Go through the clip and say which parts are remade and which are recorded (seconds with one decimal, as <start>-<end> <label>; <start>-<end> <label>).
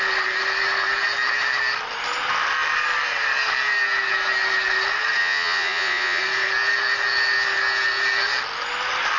0.0-5.2 recorded; 5.2-6.2 remade; 6.2-9.2 recorded